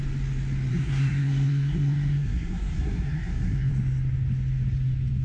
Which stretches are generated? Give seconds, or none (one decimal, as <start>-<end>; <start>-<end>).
0.7-3.7